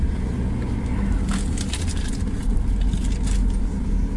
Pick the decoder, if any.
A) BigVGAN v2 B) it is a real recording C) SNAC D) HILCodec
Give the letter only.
B